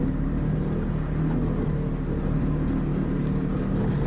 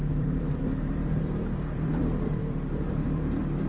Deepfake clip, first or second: second